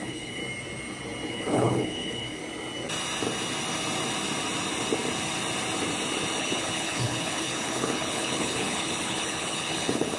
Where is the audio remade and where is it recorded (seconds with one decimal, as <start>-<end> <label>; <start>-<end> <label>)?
0.0-0.4 remade; 0.4-1.3 recorded; 1.3-2.4 remade; 2.4-6.4 recorded; 6.4-10.2 remade